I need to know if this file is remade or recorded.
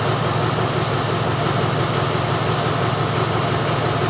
recorded